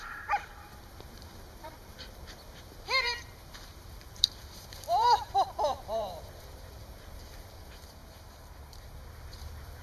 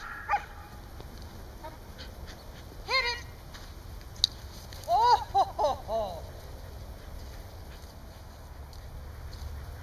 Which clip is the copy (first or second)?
first